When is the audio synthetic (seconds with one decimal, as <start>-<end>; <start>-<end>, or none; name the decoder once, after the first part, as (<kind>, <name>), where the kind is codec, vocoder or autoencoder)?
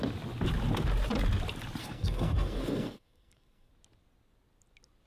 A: 1.8-3.7 (codec, SNAC)